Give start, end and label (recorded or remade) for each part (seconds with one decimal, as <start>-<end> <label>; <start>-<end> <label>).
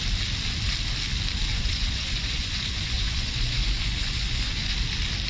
0.0-1.5 recorded; 1.5-4.7 remade; 4.7-5.3 recorded